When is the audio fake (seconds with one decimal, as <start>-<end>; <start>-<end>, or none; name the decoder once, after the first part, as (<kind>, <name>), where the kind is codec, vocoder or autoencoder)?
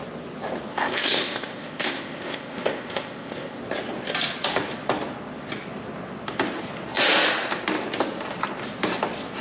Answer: 0.7-3.6 (codec, ZipCodec)